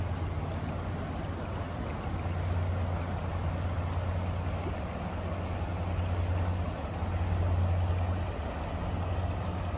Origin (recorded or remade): recorded